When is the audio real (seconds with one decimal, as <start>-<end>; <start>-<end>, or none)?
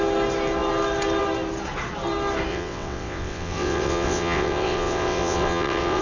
0.0-2.5